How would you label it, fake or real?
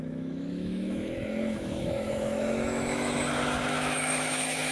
fake